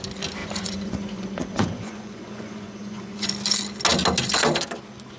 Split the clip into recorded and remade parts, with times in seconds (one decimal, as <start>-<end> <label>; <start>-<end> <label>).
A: 0.0-0.4 recorded; 0.4-3.3 remade; 3.3-5.2 recorded